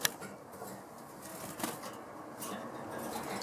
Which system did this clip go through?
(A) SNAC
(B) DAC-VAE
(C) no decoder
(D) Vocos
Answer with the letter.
C